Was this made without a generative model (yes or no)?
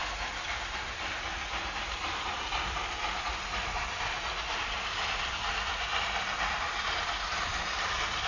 yes